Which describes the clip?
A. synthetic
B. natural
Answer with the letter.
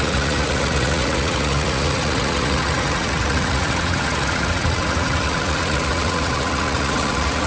A